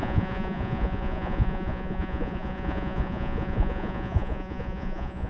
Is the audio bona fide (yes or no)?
no